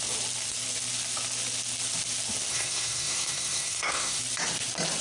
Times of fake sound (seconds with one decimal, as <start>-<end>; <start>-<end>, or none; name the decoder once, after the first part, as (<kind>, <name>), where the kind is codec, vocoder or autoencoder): 2.5-4.2 (codec, SNAC)